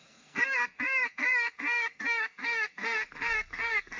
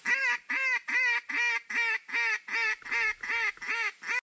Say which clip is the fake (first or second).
first